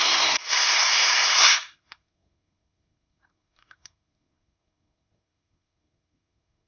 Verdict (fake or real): fake